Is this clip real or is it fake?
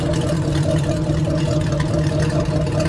fake